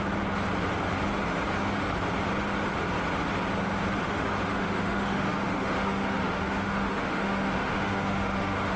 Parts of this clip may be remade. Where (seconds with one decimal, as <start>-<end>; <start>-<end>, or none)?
4.0-8.8